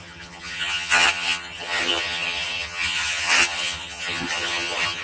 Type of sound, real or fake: fake